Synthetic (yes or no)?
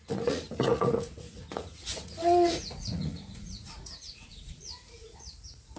yes